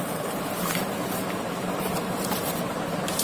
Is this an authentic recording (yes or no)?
no